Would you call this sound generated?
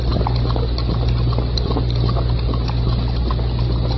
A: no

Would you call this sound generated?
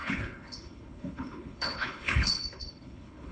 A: yes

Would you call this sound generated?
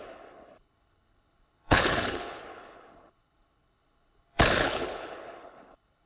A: yes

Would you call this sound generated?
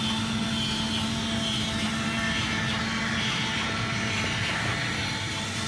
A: no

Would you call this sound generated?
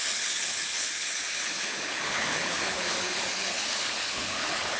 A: yes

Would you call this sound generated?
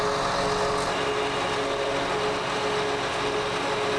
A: no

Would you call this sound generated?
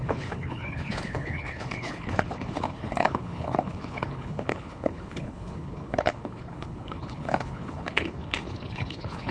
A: yes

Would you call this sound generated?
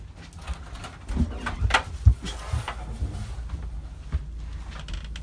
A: no